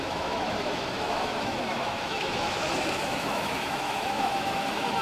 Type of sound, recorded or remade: remade